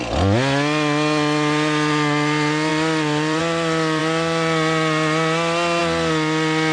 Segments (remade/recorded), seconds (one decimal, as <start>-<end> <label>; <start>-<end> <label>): 0.0-2.7 recorded; 2.7-3.4 remade; 3.4-6.7 recorded